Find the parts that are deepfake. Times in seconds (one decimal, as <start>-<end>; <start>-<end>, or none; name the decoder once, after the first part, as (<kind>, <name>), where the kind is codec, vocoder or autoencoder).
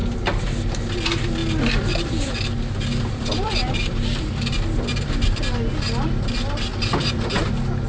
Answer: 0.0-0.8 (vocoder, BigVGAN v2); 1.4-5.4; 6.7-7.5